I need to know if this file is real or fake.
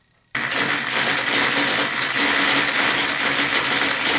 real